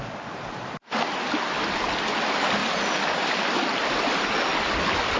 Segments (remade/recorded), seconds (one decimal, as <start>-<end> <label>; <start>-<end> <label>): 0.0-5.2 recorded